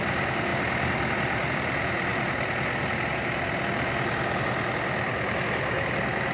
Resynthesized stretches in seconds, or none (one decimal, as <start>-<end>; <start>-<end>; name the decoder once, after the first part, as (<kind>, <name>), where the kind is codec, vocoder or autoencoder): none